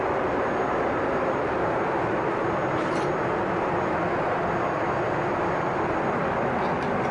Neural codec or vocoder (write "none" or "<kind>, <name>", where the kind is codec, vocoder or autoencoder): none